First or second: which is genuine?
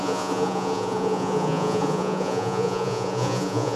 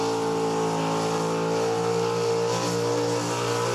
second